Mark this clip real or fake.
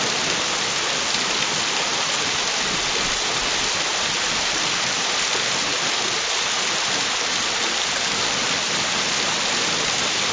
real